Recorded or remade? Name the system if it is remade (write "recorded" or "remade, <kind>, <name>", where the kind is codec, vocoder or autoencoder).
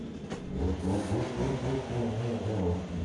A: recorded